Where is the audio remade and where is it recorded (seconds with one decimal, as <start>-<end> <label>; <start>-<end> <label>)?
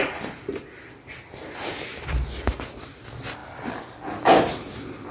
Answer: 0.0-3.4 remade; 3.4-3.9 recorded; 3.9-5.1 remade